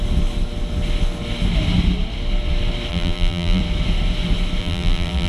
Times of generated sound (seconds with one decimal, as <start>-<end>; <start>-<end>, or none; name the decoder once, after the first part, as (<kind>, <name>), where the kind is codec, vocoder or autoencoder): 2.9-3.6 (vocoder, BigVGAN v2); 4.6-5.3